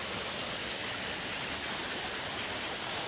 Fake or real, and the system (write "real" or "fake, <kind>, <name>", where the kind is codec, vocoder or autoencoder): real